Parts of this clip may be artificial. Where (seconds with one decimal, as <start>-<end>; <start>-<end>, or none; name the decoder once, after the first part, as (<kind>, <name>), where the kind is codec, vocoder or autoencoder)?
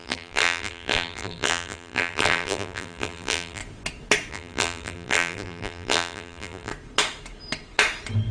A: 0.0-3.6 (vocoder, BigVGAN v2); 4.3-6.7